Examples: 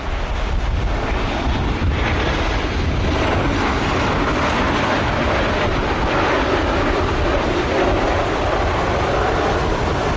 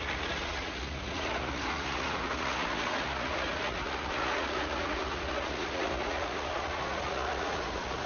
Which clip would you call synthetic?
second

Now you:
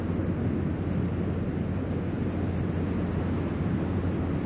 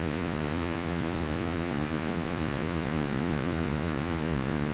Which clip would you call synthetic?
second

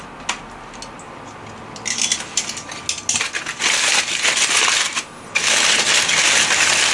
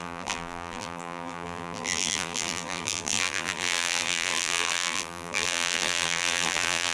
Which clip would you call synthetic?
second